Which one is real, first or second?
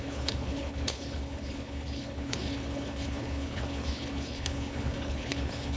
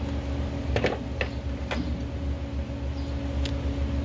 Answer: second